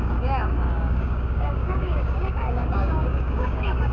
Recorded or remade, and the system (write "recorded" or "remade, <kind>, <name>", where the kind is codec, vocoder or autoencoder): remade, codec, DAC